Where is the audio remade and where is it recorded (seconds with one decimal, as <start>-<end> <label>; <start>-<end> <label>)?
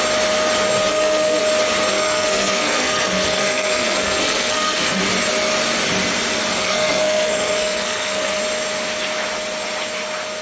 0.0-0.9 recorded; 0.9-1.4 remade; 1.4-1.9 recorded; 1.9-5.0 remade; 5.0-6.6 recorded; 6.6-8.4 remade; 8.4-10.4 recorded